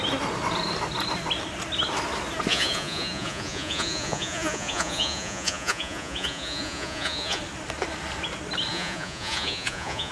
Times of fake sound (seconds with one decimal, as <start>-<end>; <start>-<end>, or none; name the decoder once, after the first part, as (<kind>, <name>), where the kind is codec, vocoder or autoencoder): 2.5-7.4 (vocoder, Vocos); 8.7-10.1